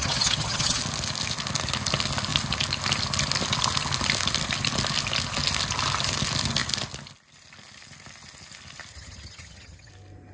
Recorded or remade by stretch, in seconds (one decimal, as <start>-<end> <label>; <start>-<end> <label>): 0.0-0.8 remade; 0.8-8.9 recorded; 8.9-9.9 remade; 9.9-10.3 recorded